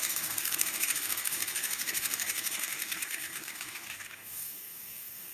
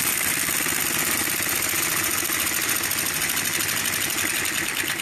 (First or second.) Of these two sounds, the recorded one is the second